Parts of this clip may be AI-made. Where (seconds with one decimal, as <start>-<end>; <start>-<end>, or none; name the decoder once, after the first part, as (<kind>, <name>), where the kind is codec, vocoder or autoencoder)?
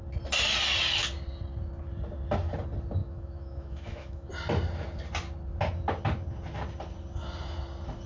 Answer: 3.0-4.3 (autoencoder, DAC-VAE)